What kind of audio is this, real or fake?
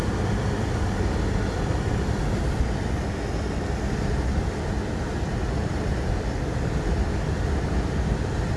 real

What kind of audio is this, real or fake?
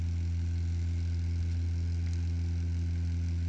real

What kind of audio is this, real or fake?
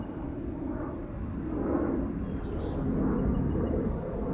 real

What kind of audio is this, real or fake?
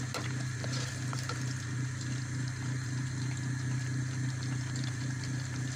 real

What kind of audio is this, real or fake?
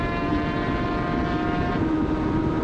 fake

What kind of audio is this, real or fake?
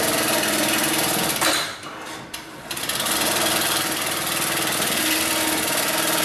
fake